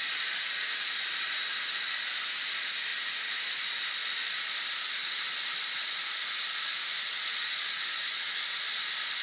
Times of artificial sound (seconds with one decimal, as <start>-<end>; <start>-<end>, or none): 2.9-3.4